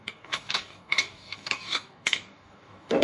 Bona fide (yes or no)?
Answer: no